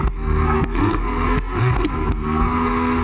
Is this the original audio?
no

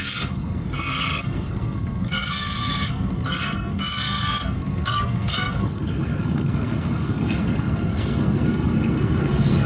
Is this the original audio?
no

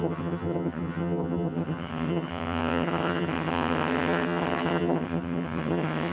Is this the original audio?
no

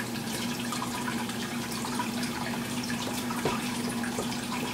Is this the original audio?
no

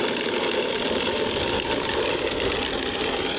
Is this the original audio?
yes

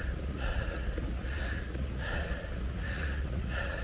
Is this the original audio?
no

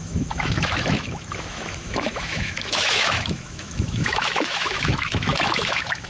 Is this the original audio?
no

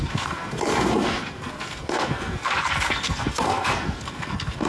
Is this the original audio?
no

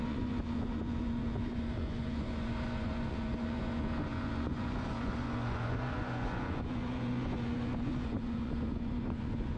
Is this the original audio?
no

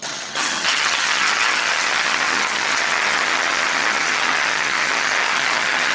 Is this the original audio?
no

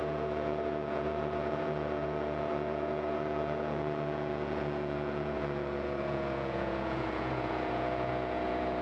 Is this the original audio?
no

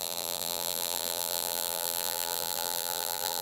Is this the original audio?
no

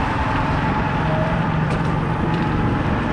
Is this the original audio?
no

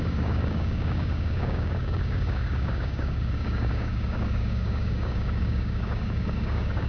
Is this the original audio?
no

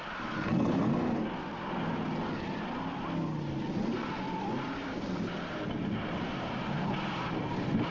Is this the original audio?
yes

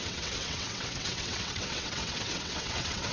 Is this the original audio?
no